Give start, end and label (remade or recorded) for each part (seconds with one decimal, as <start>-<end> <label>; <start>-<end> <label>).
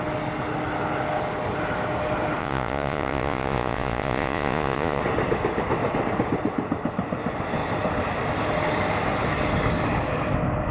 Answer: 0.0-2.4 recorded; 2.4-5.0 remade; 5.0-10.7 recorded